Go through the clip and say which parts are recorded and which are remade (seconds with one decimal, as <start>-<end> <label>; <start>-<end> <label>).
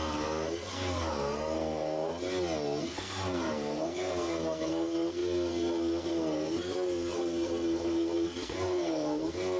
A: 0.0-2.1 remade; 2.1-2.8 recorded; 2.8-9.6 remade